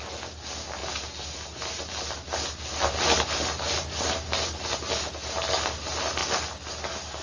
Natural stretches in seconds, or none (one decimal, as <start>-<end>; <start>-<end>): 0.0-7.2